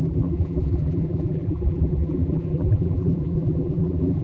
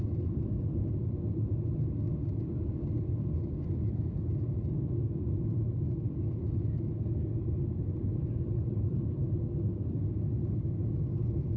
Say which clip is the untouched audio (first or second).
second